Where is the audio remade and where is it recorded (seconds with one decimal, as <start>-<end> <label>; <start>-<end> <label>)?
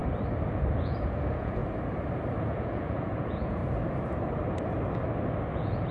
0.0-0.5 recorded; 0.5-1.6 remade; 1.6-2.4 recorded; 2.4-3.6 remade; 3.6-5.5 recorded; 5.5-5.9 remade